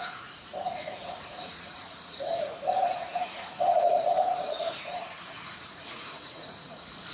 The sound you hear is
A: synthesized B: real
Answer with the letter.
A